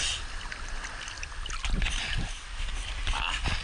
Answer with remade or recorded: recorded